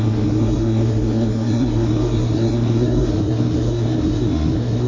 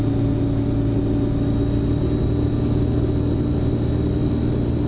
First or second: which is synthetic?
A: first